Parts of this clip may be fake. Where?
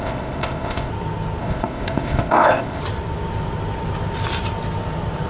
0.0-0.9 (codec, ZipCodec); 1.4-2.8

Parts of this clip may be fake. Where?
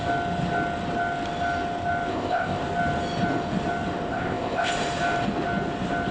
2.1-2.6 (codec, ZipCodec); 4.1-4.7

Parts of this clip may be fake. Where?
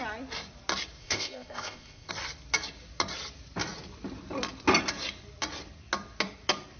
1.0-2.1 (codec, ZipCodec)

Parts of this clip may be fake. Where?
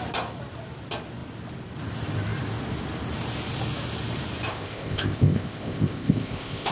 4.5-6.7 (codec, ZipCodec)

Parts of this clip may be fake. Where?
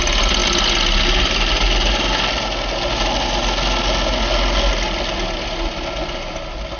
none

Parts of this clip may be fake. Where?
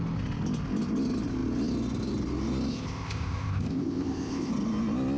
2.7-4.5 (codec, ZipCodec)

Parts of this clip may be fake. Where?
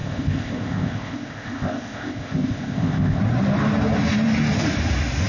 0.0-3.2 (codec, ZipCodec)